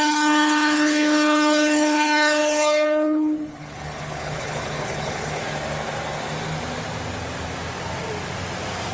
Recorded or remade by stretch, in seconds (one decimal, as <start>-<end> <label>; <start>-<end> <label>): 0.0-5.4 remade; 5.4-8.9 recorded